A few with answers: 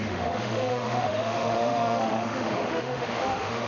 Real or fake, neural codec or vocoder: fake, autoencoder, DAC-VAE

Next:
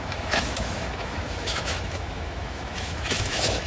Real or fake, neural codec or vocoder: fake, autoencoder, DAC-VAE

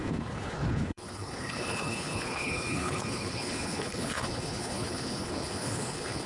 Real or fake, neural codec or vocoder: fake, codec, HILCodec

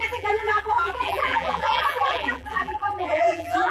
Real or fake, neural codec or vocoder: fake, vocoder, BigVGAN v2